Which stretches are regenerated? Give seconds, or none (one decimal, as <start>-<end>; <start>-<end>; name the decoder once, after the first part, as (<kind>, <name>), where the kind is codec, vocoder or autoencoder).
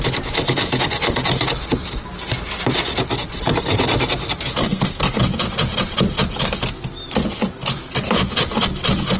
4.6-5.2 (codec, SNAC)